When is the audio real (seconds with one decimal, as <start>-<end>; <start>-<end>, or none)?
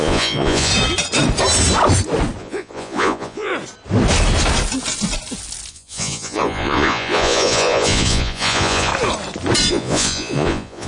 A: 0.7-2.4; 3.5-5.7; 8.9-9.7